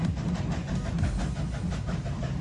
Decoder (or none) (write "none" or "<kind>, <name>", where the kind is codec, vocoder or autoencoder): none